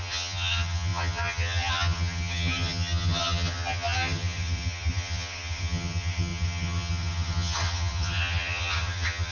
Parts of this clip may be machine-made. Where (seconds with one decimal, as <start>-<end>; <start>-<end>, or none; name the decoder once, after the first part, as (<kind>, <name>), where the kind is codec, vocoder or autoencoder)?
0.0-9.3 (vocoder, HiFi-GAN)